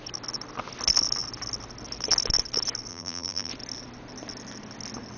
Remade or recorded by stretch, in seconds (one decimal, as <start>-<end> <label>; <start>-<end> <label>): 0.0-2.9 recorded; 2.9-3.5 remade; 3.5-5.2 recorded